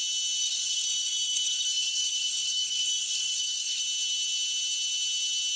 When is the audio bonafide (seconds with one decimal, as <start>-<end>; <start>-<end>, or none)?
0.0-0.4; 3.8-5.6